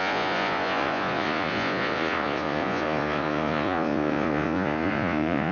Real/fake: fake